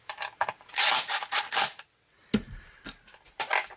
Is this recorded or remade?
recorded